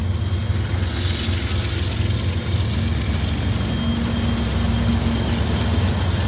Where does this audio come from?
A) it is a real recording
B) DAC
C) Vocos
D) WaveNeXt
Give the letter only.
A